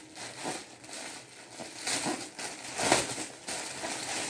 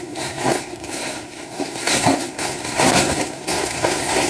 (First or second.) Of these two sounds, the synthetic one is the second